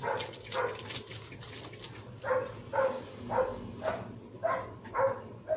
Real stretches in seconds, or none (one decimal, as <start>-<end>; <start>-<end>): 0.0-5.6